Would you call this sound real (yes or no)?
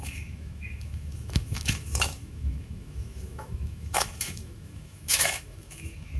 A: no